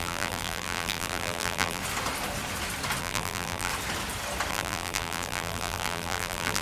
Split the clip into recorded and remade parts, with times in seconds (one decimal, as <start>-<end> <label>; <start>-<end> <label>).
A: 0.0-1.8 remade; 1.8-3.0 recorded; 3.0-3.7 remade; 3.7-4.5 recorded; 4.5-6.6 remade

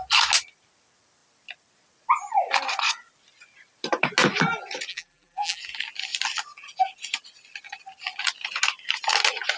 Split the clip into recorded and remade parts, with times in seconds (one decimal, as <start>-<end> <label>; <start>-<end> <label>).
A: 0.0-4.9 recorded; 4.9-5.6 remade; 5.6-9.6 recorded

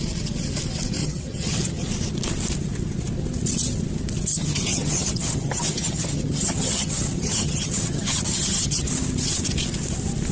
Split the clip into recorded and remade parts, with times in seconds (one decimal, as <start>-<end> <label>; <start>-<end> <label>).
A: 0.0-1.0 recorded; 1.0-1.9 remade; 1.9-4.3 recorded; 4.3-8.9 remade; 8.9-10.3 recorded